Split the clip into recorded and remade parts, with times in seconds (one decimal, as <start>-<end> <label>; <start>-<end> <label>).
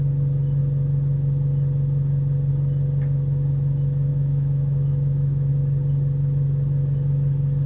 0.0-4.1 recorded; 4.1-5.5 remade; 5.5-7.7 recorded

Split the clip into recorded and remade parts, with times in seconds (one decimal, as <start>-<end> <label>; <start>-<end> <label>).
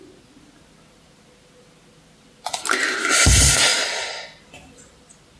0.0-5.4 recorded